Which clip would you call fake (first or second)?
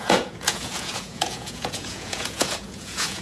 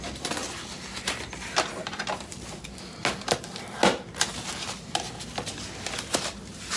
first